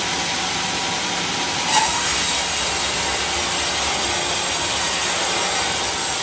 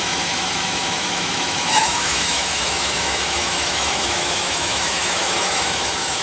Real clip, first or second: first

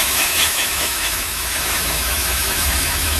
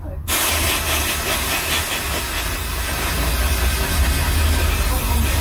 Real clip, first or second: second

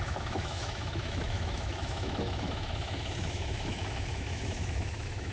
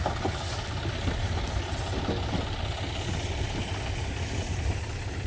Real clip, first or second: second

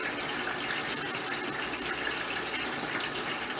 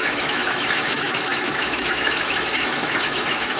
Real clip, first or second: first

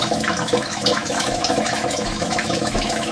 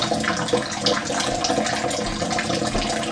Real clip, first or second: second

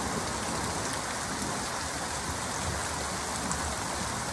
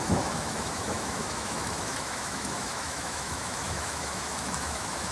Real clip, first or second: first